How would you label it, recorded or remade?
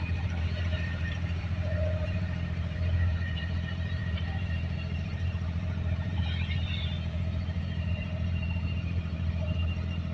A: remade